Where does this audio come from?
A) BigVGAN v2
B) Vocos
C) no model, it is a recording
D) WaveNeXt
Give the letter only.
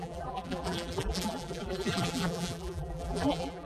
A